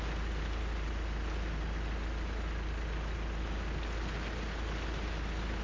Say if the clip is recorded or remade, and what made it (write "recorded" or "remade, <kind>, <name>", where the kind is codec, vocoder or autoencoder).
recorded